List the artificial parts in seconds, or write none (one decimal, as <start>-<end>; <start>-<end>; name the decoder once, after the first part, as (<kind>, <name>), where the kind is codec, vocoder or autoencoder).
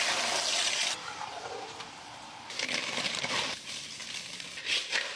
0.8-3.9 (vocoder, BigVGAN v2)